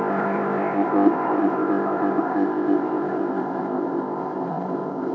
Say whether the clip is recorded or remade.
remade